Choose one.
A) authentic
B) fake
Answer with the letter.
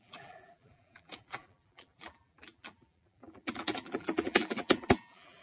B